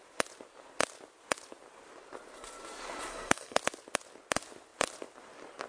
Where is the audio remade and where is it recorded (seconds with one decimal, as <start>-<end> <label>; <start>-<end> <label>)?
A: 0.0-3.1 recorded; 3.1-3.6 remade; 3.6-5.7 recorded